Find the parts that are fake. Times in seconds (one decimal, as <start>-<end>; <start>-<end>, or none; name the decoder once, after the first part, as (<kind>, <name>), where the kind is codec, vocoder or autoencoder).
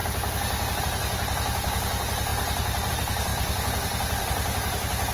0.8-5.1 (vocoder, BigVGAN v2)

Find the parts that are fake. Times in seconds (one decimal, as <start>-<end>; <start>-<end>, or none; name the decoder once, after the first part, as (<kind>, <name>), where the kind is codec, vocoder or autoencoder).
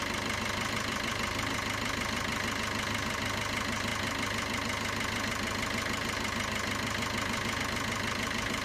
none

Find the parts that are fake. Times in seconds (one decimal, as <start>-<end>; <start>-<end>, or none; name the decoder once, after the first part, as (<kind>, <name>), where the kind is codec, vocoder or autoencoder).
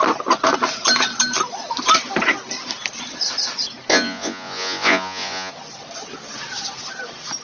3.9-5.5 (vocoder, Vocos)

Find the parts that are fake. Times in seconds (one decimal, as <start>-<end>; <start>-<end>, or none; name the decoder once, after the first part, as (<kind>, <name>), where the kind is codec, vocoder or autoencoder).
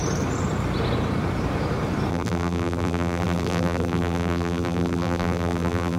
2.1-6.0 (vocoder, BigVGAN v2)